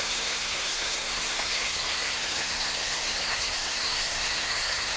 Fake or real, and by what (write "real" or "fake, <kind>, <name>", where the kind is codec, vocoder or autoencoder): fake, codec, SNAC